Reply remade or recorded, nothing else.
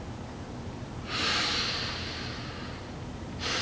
recorded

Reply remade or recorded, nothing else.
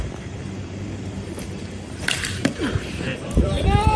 remade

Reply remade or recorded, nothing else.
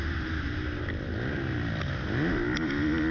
recorded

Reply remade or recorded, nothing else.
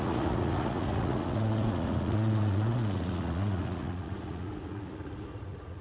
remade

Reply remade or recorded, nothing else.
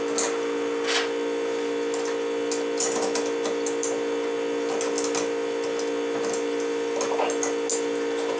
recorded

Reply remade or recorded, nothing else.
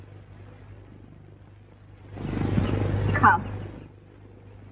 recorded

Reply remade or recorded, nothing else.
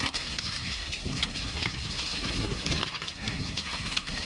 remade